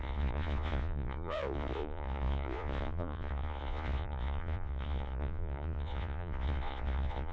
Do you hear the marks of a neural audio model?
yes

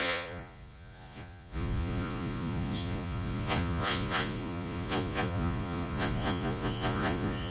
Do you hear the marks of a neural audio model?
yes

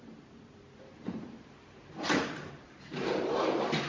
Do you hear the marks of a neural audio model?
yes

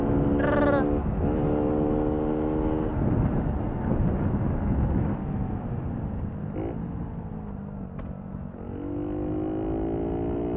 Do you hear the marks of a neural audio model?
no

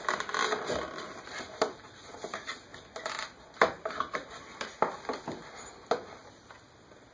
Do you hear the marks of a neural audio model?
no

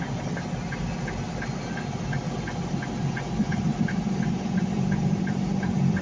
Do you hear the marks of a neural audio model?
no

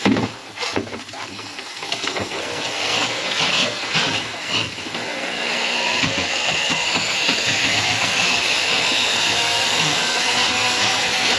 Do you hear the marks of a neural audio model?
yes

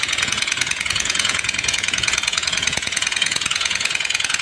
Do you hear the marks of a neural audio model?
yes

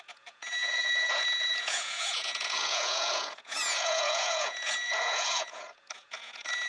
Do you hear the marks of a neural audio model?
yes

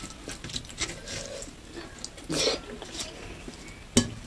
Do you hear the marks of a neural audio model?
no